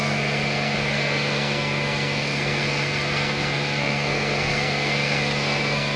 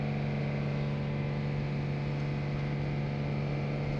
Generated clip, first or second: first